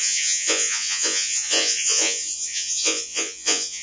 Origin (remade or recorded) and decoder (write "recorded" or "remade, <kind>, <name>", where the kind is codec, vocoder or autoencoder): remade, vocoder, Vocos